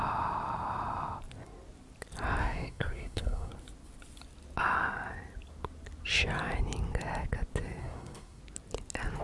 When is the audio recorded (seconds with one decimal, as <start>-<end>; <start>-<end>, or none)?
0.0-2.4; 3.5-7.8; 8.4-9.2